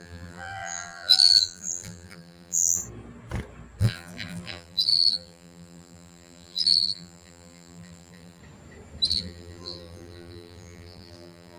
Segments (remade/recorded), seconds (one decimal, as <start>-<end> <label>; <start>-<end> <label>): 0.0-2.8 remade; 2.8-3.8 recorded; 3.8-8.4 remade; 8.4-9.1 recorded; 9.1-11.6 remade